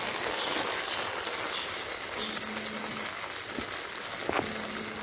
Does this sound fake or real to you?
real